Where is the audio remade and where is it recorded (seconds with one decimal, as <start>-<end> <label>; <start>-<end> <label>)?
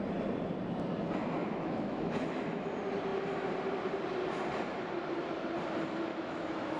0.0-1.4 recorded; 1.4-2.7 remade; 2.7-6.1 recorded; 6.1-6.8 remade